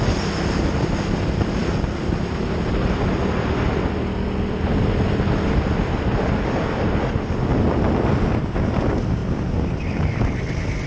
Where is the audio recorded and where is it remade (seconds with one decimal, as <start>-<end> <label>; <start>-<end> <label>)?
0.0-10.9 recorded